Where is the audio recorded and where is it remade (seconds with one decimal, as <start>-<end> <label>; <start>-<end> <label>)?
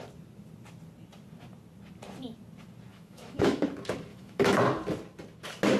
0.0-2.9 recorded; 2.9-3.6 remade; 3.6-4.1 recorded; 4.1-4.6 remade; 4.6-5.8 recorded